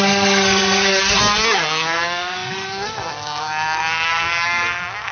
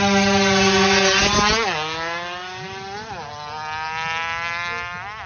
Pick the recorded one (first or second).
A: second